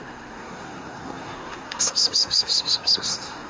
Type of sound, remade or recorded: remade